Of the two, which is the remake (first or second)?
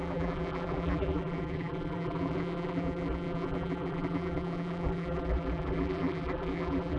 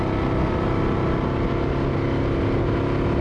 first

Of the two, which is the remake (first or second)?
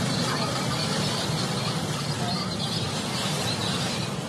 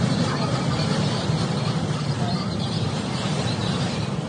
second